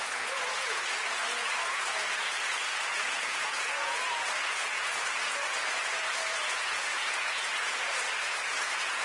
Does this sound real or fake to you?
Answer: fake